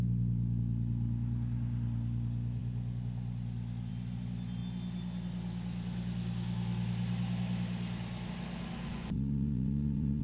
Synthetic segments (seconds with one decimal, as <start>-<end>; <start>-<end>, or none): 8.9-10.2